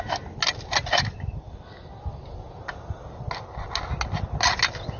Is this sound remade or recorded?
recorded